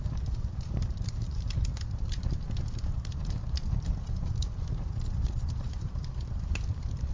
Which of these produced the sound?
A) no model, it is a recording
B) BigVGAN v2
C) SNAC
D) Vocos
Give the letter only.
B